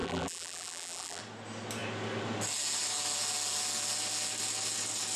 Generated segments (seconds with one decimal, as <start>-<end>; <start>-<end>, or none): 0.0-1.2